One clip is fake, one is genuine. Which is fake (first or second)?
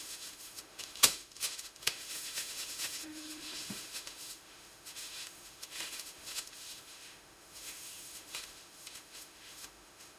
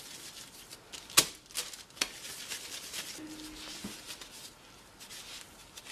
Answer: first